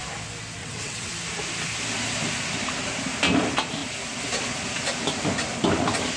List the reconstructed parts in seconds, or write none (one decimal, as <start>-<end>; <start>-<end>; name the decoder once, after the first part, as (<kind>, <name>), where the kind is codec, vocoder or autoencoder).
0.6-1.1 (vocoder, WaveNeXt)

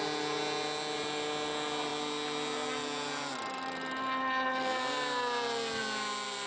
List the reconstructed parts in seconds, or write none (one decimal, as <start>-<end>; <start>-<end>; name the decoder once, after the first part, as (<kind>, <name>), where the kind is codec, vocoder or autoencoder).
none

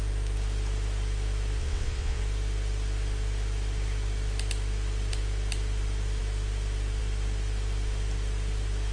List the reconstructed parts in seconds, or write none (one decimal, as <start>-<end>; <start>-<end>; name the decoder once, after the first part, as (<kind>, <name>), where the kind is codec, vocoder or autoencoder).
1.6-2.2 (vocoder, WaveNeXt)

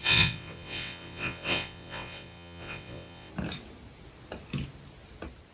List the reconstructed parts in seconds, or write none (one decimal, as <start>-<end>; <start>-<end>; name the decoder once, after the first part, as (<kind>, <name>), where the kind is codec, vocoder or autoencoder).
0.0-3.3 (vocoder, WaveNeXt)

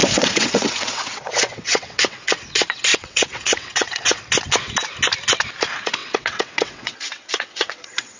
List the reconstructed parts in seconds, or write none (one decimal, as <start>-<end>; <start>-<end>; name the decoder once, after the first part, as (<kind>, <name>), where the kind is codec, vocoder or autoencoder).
0.0-2.3 (vocoder, WaveNeXt); 2.9-4.2; 6.0-8.2

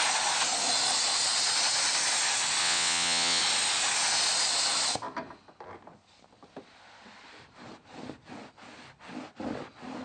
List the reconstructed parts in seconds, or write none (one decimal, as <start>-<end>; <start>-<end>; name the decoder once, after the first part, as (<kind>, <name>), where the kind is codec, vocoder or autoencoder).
2.6-3.4 (vocoder, WaveNeXt)

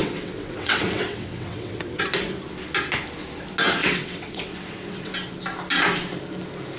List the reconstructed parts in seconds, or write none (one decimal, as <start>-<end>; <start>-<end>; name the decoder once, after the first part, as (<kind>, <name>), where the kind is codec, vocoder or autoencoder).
0.0-2.0 (vocoder, WaveNeXt); 3.8-5.1